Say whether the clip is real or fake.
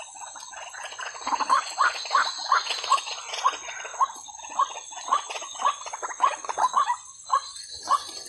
fake